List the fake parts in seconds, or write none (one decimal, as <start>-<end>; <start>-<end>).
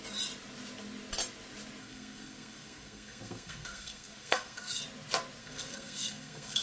1.8-4.8; 5.4-6.6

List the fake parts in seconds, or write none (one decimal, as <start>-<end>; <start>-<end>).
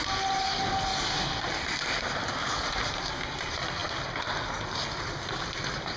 none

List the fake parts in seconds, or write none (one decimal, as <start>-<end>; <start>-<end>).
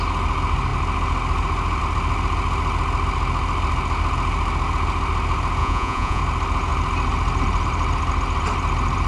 5.6-6.2